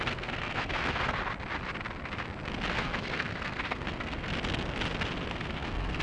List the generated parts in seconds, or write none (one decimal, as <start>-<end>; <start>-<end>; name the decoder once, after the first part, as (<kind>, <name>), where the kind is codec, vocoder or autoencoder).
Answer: 0.0-1.2 (codec, SNAC); 2.7-4.3; 5.3-6.0